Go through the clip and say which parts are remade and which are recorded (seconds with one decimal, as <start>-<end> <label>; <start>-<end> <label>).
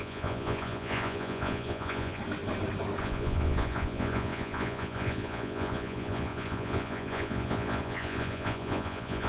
0.0-2.2 remade; 2.2-3.0 recorded; 3.0-9.3 remade